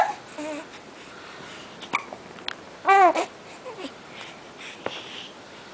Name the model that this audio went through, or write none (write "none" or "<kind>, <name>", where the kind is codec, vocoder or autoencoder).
none